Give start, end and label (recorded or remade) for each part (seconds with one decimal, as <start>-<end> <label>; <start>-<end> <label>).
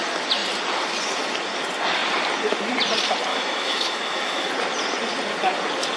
0.0-3.3 recorded; 3.3-4.5 remade; 4.5-6.0 recorded